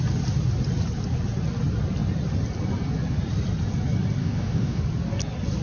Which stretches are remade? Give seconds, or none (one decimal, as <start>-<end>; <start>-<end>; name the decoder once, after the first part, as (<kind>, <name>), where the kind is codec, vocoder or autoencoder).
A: 4.2-4.8 (codec, DAC)